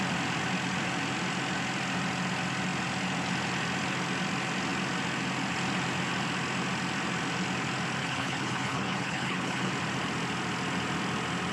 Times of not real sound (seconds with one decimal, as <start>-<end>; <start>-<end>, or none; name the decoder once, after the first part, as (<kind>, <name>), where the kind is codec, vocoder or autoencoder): 8.0-9.7 (codec, HILCodec)